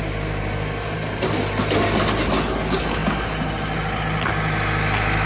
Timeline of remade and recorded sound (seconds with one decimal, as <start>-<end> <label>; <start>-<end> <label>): 0.0-5.3 recorded